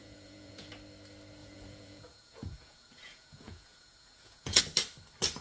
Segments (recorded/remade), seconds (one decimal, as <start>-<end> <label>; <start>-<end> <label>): 0.0-0.7 remade; 0.7-1.4 recorded; 1.4-4.6 remade; 4.6-5.4 recorded